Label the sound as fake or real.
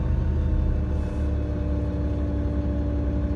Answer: real